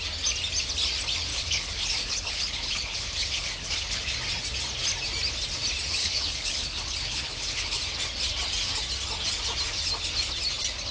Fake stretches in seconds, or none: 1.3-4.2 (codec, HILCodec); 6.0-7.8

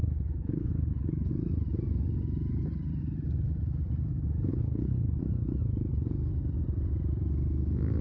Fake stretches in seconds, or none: 0.0-1.3 (codec, HILCodec); 4.5-5.2